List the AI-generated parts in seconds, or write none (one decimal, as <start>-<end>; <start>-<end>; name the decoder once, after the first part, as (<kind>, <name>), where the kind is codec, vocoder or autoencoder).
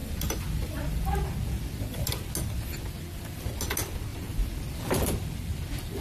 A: 0.0-2.1 (vocoder, BigVGAN v2); 4.1-4.8